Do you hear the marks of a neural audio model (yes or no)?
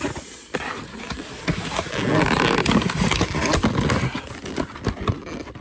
no